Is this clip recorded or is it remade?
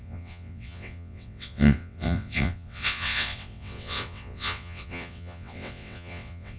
remade